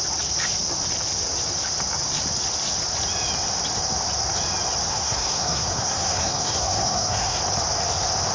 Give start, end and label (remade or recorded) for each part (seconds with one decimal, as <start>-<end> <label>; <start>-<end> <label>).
0.0-4.9 recorded; 4.9-7.4 remade; 7.4-8.3 recorded